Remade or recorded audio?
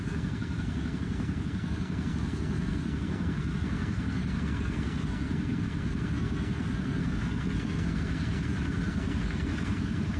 remade